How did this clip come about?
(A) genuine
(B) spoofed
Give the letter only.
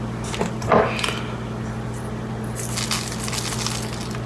A